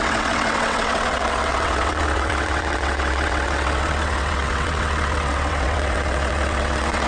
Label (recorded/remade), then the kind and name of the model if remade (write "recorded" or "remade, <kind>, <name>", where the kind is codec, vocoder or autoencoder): remade, vocoder, WaveNeXt